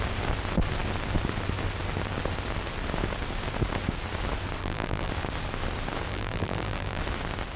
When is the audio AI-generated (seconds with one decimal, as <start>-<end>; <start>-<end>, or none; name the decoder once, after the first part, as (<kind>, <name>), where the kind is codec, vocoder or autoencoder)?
4.6-5.1 (vocoder, BigVGAN v2); 6.1-7.0